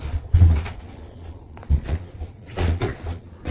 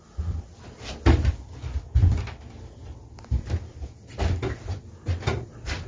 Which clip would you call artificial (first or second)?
first